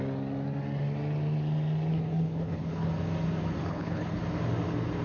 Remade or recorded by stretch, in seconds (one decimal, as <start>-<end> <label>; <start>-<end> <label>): 0.0-1.9 recorded; 1.9-2.9 remade; 2.9-3.6 recorded; 3.6-4.2 remade; 4.2-5.0 recorded